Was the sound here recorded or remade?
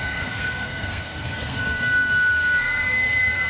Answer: remade